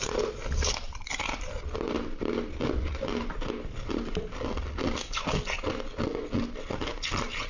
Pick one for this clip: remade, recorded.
recorded